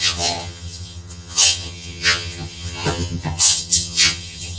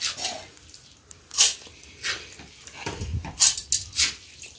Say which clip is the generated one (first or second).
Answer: first